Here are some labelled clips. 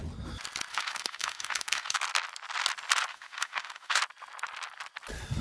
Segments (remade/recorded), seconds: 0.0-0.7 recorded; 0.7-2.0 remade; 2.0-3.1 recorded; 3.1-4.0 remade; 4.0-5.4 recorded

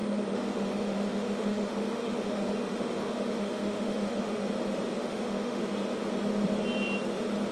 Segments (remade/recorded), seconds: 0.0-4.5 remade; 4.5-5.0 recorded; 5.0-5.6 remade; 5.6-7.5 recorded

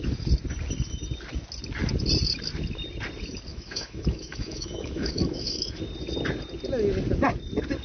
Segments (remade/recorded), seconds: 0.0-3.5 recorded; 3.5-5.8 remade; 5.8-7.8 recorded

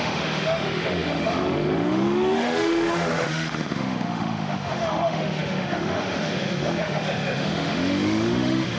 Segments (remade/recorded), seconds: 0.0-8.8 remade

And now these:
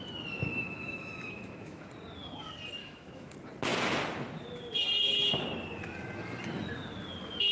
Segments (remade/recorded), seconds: 0.0-0.5 recorded; 0.5-1.9 remade; 1.9-2.8 recorded; 2.8-3.3 remade; 3.3-7.5 recorded